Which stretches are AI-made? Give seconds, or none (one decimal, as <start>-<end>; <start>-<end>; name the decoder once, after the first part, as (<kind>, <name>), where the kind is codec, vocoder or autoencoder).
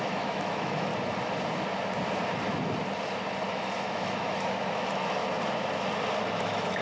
0.0-0.9 (autoencoder, DAC-VAE); 3.5-5.2; 6.3-6.8